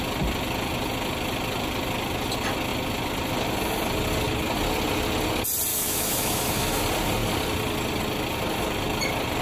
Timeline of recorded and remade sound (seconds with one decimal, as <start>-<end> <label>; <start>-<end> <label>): 0.0-5.7 recorded; 5.7-6.8 remade; 6.8-9.4 recorded